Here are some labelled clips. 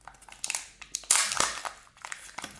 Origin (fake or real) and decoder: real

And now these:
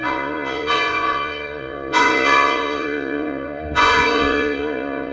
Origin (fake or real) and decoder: fake, vocoder, Vocos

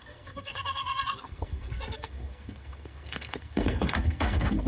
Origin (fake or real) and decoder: fake, codec, SNAC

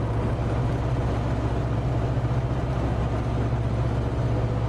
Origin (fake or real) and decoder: real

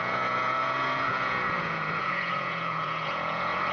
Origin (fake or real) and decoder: fake, vocoder, Vocos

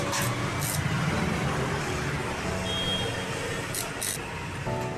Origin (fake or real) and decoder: real